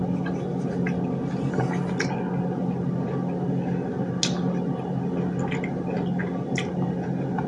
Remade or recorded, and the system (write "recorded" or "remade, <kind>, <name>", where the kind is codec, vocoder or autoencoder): recorded